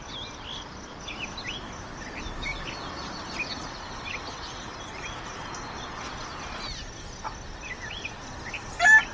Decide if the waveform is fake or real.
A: real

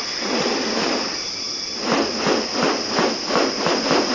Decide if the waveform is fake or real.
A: real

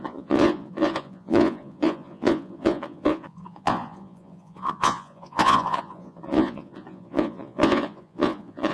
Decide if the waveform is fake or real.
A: fake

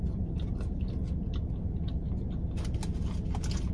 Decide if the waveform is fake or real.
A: real